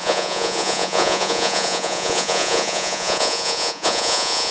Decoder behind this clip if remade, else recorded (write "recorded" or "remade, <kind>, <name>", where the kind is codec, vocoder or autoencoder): remade, vocoder, Vocos